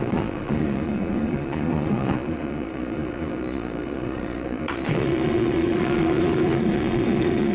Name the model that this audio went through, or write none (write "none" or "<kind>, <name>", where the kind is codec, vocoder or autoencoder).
vocoder, Vocos